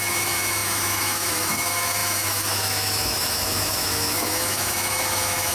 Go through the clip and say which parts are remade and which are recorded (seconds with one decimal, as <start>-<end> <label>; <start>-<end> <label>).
0.0-5.5 remade